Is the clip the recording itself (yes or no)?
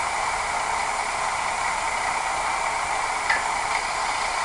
no